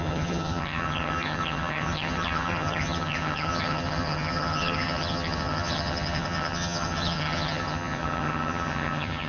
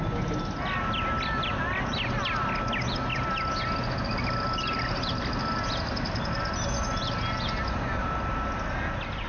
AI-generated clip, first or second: first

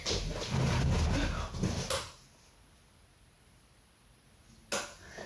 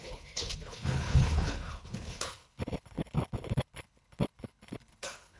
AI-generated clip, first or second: second